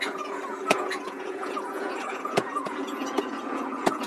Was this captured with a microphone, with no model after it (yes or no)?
no